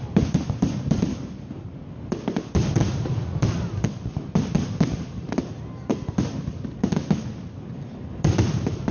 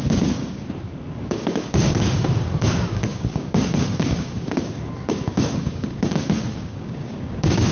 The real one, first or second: first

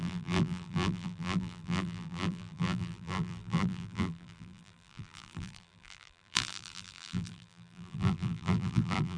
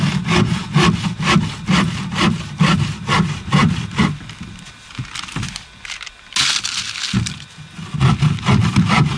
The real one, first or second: second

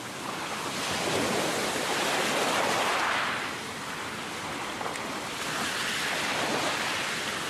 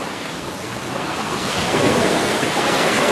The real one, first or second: first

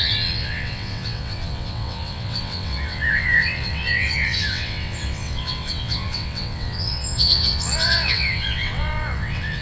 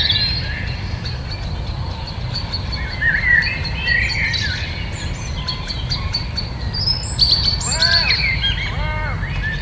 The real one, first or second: second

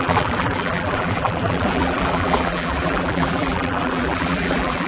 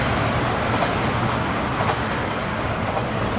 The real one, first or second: second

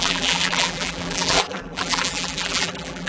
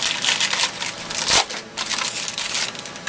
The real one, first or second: second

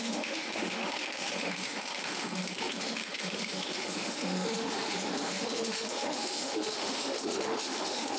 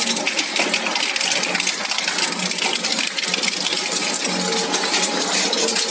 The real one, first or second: second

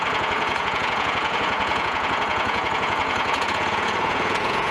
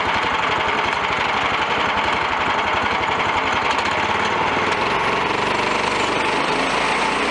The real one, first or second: second